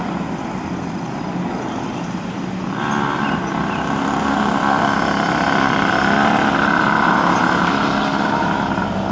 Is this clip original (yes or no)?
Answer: yes